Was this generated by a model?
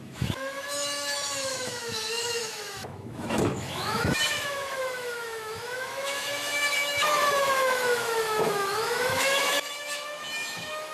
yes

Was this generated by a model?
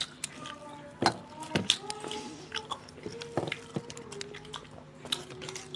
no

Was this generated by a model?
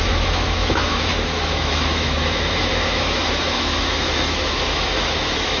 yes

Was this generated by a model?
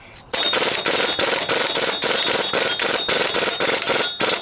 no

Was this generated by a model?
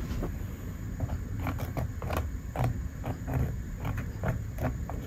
no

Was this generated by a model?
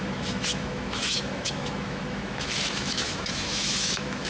yes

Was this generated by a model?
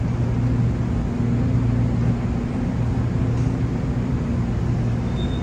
no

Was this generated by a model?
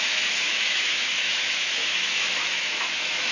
yes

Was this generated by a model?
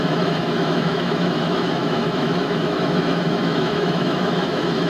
yes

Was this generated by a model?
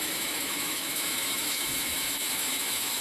yes